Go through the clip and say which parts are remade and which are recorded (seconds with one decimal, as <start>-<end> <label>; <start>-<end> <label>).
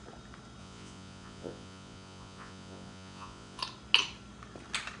0.0-0.6 recorded; 0.6-3.6 remade; 3.6-5.0 recorded